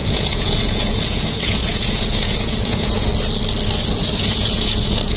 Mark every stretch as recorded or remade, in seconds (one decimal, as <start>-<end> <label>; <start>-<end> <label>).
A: 0.0-3.1 remade; 3.1-4.0 recorded; 4.0-5.2 remade